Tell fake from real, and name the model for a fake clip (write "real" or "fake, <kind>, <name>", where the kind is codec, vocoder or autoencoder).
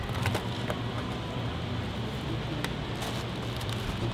real